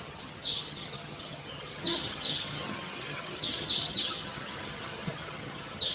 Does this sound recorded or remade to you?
remade